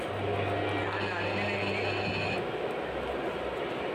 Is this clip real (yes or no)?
yes